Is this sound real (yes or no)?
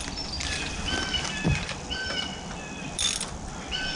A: yes